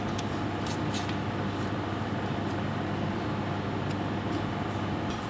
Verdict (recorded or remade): recorded